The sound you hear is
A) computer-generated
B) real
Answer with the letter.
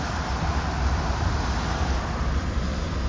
B